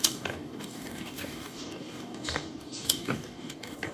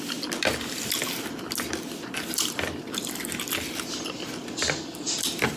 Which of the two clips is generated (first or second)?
first